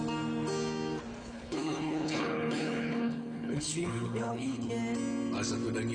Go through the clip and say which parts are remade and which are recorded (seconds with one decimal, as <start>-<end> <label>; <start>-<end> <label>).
0.0-1.2 recorded; 1.2-4.7 remade; 4.7-5.9 recorded